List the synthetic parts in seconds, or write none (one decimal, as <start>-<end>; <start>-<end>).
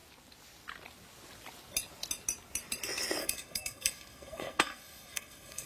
3.2-5.7